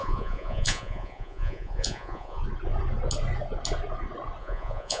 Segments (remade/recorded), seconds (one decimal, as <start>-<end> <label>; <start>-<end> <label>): 0.0-2.4 remade; 2.4-4.4 recorded; 4.4-5.0 remade

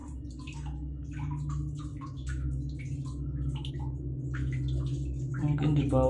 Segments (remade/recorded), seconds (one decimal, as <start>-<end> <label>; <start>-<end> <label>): 0.0-6.1 recorded

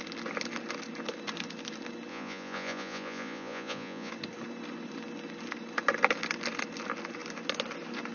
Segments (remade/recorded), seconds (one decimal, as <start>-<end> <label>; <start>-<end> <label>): 0.0-2.1 recorded; 2.1-4.1 remade; 4.1-8.1 recorded

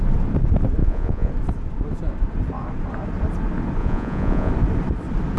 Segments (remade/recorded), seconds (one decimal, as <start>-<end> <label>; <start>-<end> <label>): 0.0-0.8 recorded; 0.8-1.3 remade; 1.3-3.8 recorded; 3.8-4.5 remade; 4.5-5.4 recorded

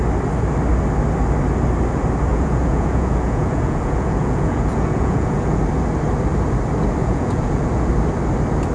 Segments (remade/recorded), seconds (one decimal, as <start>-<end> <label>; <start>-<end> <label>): 0.0-2.3 recorded; 2.3-5.6 remade; 5.6-7.0 recorded; 7.0-7.9 remade; 7.9-8.7 recorded